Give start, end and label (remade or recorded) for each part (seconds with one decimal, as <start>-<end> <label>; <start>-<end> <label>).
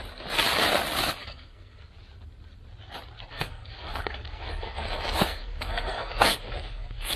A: 0.0-1.2 recorded; 1.2-1.9 remade; 1.9-3.3 recorded; 3.3-7.2 remade